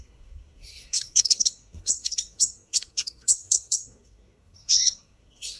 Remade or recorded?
remade